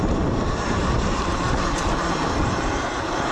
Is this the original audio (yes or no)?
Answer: no